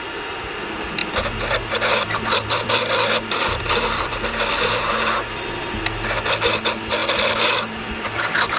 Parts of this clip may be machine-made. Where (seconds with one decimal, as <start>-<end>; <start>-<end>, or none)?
1.0-5.7